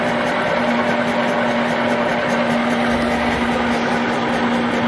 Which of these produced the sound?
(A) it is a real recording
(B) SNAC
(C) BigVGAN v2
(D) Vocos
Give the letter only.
A